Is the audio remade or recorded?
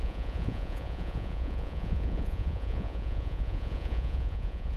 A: remade